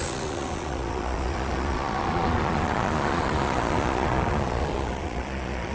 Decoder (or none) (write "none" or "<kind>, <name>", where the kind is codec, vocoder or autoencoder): vocoder, Vocos